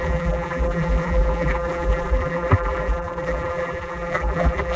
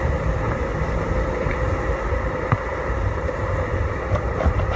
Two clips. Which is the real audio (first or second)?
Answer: second